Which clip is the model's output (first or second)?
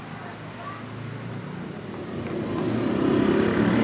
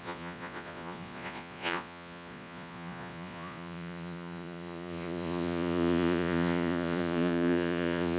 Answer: second